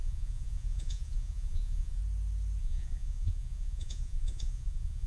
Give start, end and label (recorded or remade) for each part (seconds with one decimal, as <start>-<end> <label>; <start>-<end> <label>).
0.0-2.0 remade; 2.0-2.6 recorded; 2.6-5.1 remade